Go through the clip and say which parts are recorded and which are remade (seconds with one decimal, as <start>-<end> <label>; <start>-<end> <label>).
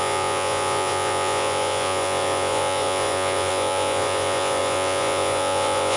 0.0-6.0 remade